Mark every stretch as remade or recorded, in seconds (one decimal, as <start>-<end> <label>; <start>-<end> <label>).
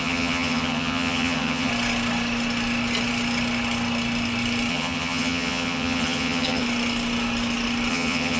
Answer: 0.0-1.7 remade; 1.7-4.7 recorded; 4.7-6.6 remade; 6.6-7.9 recorded; 7.9-8.4 remade